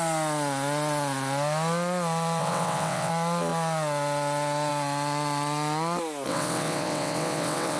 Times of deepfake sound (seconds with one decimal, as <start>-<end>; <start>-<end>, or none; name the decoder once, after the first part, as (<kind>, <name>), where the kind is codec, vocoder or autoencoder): 2.4-3.1 (vocoder, WaveNeXt); 6.3-7.8